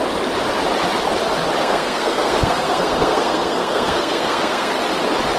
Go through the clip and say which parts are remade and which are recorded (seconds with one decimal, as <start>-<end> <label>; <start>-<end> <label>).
0.0-1.6 recorded; 1.6-4.8 remade; 4.8-5.4 recorded

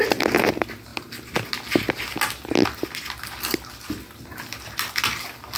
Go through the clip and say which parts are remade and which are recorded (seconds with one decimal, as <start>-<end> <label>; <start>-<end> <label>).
0.0-5.6 recorded